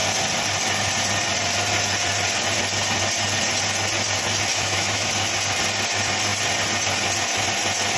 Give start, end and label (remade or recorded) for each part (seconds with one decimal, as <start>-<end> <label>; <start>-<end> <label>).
0.0-4.5 recorded; 4.5-5.1 remade; 5.1-8.0 recorded